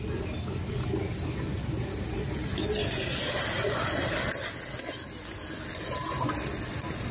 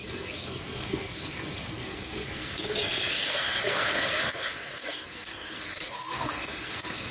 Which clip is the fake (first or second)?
second